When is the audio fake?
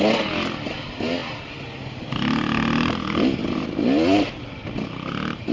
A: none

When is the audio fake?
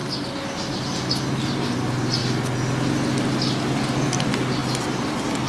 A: none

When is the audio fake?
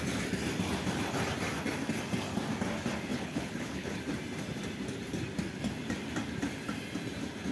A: 3.1-4.0 (codec, HILCodec)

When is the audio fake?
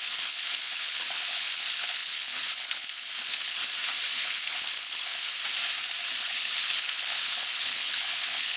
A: 0.0-3.6 (codec, HILCodec); 4.1-5.3; 6.2-8.6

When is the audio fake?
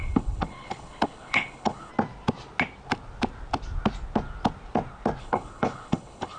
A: 0.0-1.9 (codec, HILCodec); 5.2-6.4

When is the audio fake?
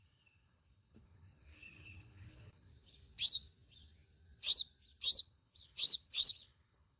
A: 0.0-2.7 (codec, HILCodec); 5.2-7.0